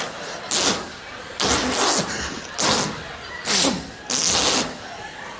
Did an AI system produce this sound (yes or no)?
no